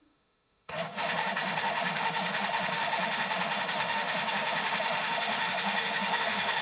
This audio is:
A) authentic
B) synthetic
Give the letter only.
B